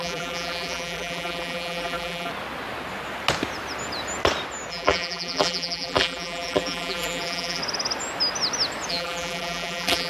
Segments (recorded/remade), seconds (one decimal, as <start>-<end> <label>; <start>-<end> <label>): 0.0-2.3 remade; 2.3-4.7 recorded; 4.7-7.6 remade; 7.6-8.9 recorded; 8.9-10.1 remade